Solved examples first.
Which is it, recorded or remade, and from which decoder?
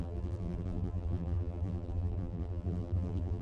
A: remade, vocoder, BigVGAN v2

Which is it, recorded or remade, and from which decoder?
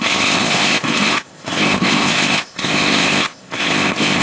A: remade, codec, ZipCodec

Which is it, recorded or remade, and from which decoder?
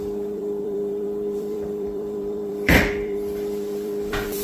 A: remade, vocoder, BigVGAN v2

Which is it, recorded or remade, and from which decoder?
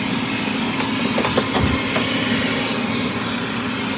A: recorded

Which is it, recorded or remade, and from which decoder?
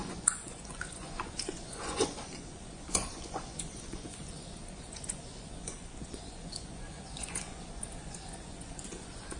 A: remade, vocoder, Vocos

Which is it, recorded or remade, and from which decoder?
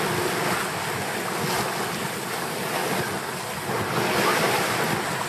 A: recorded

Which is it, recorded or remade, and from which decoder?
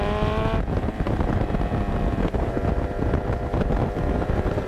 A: remade, vocoder, BigVGAN v2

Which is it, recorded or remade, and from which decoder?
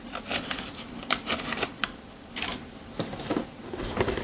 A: recorded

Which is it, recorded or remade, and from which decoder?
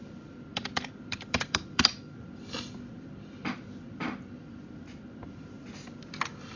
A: remade, vocoder, BigVGAN v2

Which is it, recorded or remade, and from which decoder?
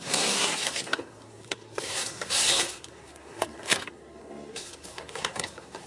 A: remade, codec, SNAC